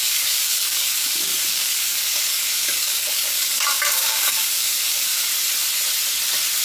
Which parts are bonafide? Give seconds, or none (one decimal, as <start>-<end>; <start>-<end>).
5.3-6.6